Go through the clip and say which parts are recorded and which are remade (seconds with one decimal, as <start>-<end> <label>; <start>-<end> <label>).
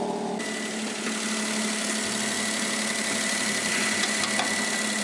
0.0-3.7 recorded; 3.7-4.2 remade; 4.2-5.0 recorded